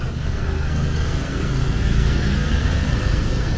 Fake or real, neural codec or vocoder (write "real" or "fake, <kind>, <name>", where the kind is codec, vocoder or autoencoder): fake, codec, SNAC